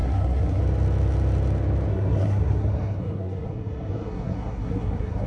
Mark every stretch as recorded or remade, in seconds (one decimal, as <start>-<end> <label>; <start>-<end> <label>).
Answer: 0.0-0.6 remade; 0.6-1.9 recorded; 1.9-5.3 remade